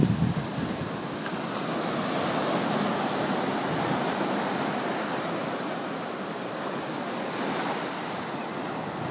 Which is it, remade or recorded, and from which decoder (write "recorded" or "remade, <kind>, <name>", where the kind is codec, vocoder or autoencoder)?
recorded